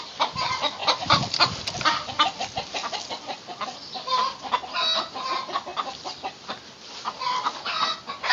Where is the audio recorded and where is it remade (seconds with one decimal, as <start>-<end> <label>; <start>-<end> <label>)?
0.0-8.3 recorded